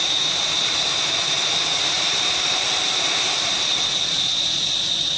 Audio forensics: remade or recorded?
remade